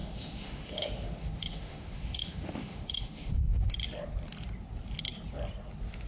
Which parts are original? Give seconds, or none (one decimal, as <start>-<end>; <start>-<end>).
3.7-6.1